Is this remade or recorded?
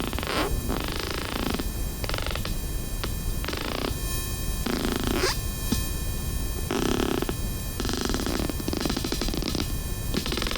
remade